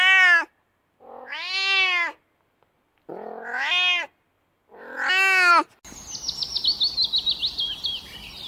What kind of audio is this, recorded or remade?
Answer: recorded